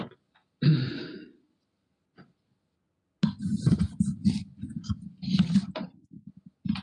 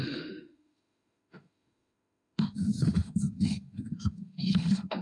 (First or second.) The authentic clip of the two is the first